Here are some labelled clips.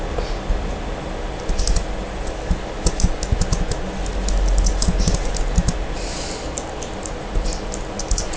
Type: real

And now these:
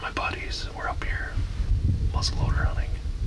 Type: real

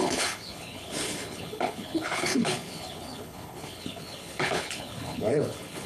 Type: fake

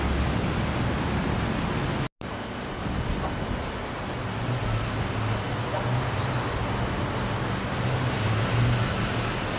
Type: real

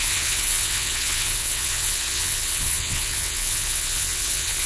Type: fake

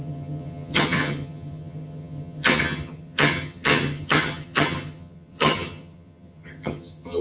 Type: fake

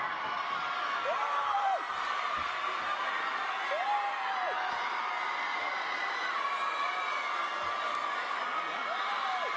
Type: real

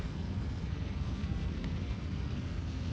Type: fake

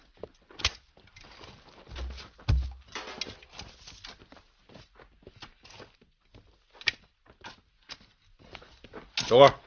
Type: real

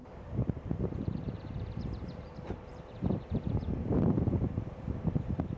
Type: fake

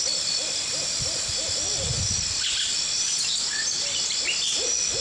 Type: real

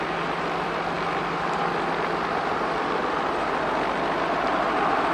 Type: real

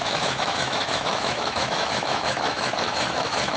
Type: fake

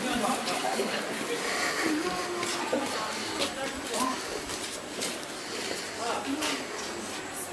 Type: real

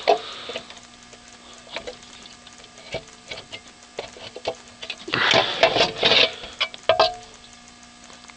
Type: real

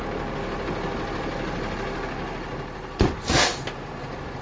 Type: real